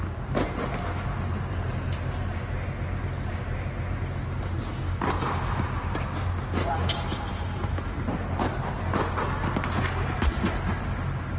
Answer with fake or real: real